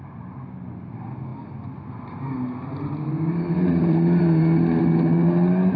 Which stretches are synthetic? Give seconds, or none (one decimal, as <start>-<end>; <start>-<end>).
none